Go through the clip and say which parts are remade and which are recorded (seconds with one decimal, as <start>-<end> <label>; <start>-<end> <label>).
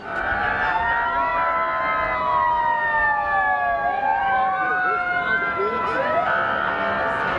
0.0-4.1 recorded; 4.1-4.7 remade; 4.7-7.4 recorded